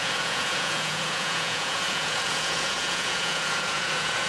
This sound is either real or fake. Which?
fake